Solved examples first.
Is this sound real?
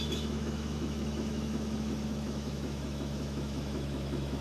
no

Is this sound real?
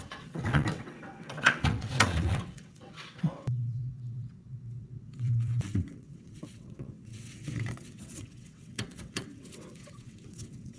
no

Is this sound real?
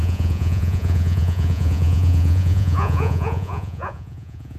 no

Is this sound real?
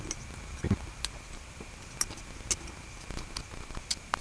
yes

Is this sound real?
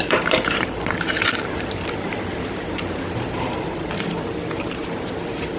no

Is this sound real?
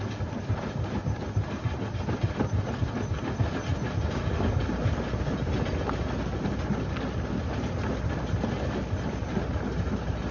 yes